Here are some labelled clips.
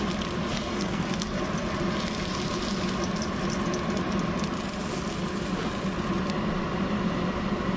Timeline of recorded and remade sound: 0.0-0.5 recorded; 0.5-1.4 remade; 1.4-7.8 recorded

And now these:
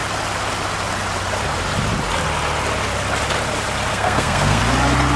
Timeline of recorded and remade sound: 0.0-3.9 recorded; 3.9-4.6 remade; 4.6-5.2 recorded

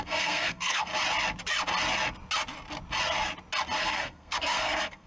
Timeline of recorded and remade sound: 0.0-0.9 remade; 0.9-3.8 recorded; 3.8-5.1 remade

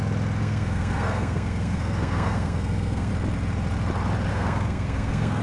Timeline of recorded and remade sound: 0.0-0.4 recorded; 0.4-3.1 remade; 3.1-4.3 recorded; 4.3-5.4 remade

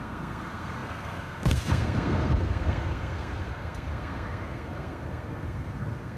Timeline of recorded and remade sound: 0.0-6.2 remade